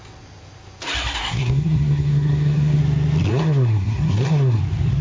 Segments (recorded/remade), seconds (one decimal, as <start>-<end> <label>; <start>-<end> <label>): 0.0-1.2 recorded; 1.2-2.8 remade; 2.8-3.3 recorded; 3.3-4.6 remade; 4.6-5.0 recorded